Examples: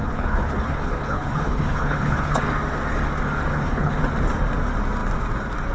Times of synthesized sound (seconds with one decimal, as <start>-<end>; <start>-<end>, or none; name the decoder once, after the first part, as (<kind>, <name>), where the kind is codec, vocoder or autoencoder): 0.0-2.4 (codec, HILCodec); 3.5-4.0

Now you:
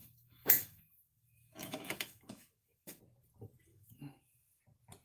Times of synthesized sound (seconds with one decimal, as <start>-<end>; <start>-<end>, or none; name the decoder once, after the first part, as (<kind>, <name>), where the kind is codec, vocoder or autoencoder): 0.0-3.0 (autoencoder, DAC-VAE); 3.7-4.6

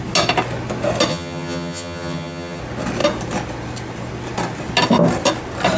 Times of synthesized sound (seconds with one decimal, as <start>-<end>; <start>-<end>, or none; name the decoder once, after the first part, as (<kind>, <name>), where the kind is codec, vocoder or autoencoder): 1.1-2.6 (vocoder, HiFi-GAN)

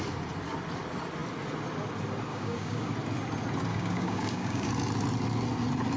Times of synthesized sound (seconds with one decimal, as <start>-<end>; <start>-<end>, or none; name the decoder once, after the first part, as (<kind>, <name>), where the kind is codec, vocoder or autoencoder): 2.3-2.9 (codec, DAC); 3.7-4.7